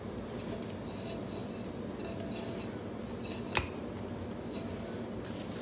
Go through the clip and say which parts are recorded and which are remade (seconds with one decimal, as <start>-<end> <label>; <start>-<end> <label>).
0.0-1.4 recorded; 1.4-1.9 remade; 1.9-5.6 recorded